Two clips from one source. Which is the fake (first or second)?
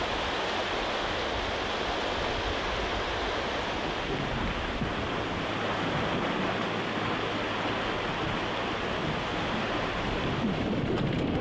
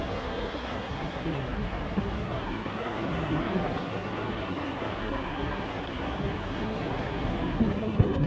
second